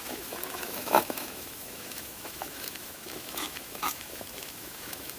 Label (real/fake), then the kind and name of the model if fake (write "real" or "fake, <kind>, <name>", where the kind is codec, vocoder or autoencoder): fake, autoencoder, DAC-VAE